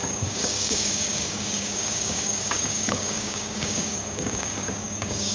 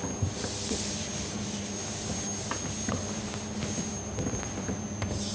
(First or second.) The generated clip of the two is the first